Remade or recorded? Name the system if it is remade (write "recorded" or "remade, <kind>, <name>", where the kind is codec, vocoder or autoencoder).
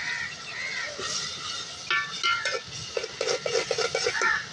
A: recorded